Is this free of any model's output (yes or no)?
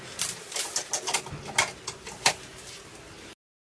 yes